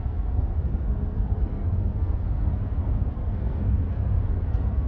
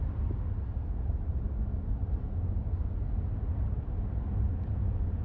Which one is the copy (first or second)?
first